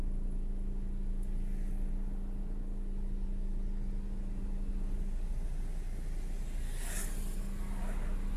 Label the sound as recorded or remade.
recorded